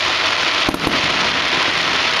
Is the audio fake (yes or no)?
no